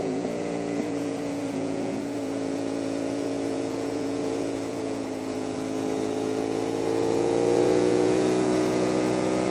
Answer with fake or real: fake